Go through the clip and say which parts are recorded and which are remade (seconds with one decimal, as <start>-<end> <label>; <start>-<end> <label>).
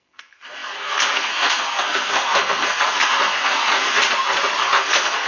0.0-4.0 remade; 4.0-4.6 recorded; 4.6-5.3 remade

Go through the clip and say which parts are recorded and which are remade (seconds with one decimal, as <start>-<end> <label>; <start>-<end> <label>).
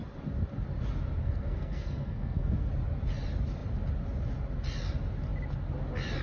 0.0-1.2 recorded; 1.2-2.7 remade; 2.7-6.2 recorded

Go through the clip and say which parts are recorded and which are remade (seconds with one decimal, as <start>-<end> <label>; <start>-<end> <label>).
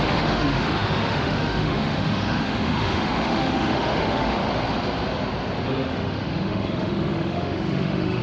0.0-4.4 remade; 4.4-5.7 recorded; 5.7-8.2 remade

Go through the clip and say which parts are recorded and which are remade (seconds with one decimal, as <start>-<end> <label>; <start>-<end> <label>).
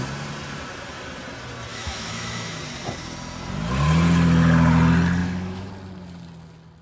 0.0-1.7 recorded; 1.7-2.6 remade; 2.6-5.2 recorded; 5.2-5.7 remade; 5.7-6.8 recorded